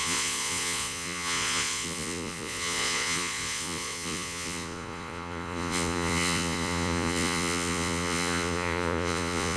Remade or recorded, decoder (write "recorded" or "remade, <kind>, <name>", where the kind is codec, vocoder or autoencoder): remade, vocoder, Vocos